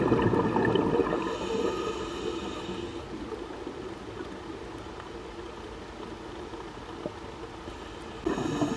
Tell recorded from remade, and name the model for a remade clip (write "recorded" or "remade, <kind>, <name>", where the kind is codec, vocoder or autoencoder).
recorded